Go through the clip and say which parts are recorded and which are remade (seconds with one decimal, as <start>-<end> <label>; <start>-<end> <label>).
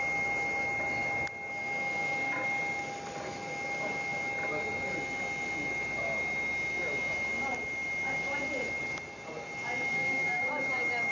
0.0-9.9 recorded; 9.9-10.4 remade; 10.4-11.1 recorded